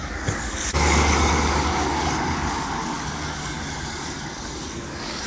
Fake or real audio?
fake